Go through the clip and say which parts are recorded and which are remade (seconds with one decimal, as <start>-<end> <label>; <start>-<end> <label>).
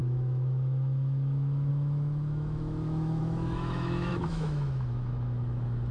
0.0-5.9 remade